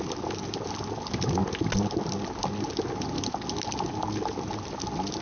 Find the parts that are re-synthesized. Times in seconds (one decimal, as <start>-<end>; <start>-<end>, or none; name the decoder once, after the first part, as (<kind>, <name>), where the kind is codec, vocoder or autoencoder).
none